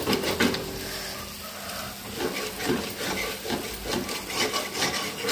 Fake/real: real